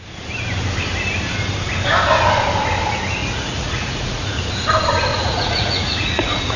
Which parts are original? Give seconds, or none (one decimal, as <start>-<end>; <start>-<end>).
0.0-3.2; 4.4-5.1